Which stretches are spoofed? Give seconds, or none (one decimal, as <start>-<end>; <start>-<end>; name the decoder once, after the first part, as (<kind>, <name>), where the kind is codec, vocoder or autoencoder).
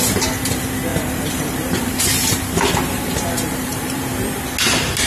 0.9-4.0 (vocoder, BigVGAN v2)